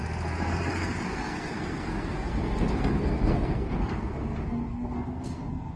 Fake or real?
fake